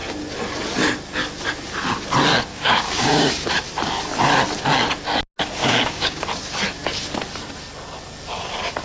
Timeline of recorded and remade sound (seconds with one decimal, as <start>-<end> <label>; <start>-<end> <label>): 0.0-2.5 recorded; 2.5-3.5 remade; 3.5-5.6 recorded; 5.6-6.2 remade; 6.2-8.8 recorded

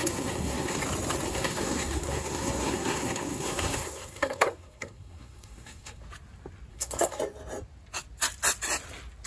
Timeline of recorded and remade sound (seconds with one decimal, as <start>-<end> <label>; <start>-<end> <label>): 0.0-0.8 remade; 0.8-1.3 recorded; 1.3-6.0 remade; 6.0-6.7 recorded; 6.7-7.2 remade; 7.2-9.3 recorded

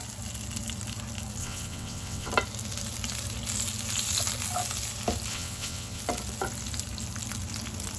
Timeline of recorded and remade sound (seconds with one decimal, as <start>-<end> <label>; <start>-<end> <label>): 0.0-1.4 recorded; 1.4-2.3 remade; 2.3-5.3 recorded; 5.3-6.0 remade; 6.0-8.0 recorded

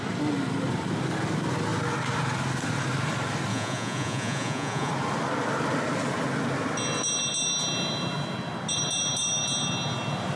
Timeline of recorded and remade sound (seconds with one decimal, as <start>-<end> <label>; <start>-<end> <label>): 0.0-3.5 recorded; 3.5-4.9 remade; 4.9-10.4 recorded

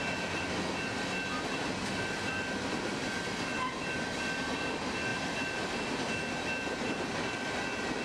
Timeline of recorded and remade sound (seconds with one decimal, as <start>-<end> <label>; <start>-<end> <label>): 0.0-3.5 recorded; 3.5-4.2 remade; 4.2-5.1 recorded; 5.1-5.8 remade; 5.8-8.0 recorded